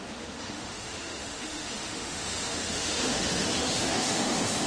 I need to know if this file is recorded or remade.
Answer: remade